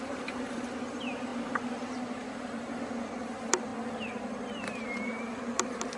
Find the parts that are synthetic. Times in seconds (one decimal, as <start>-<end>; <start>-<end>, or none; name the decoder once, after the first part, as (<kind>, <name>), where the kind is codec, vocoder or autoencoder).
0.0-1.3 (vocoder, BigVGAN v2); 2.8-3.7; 4.6-6.0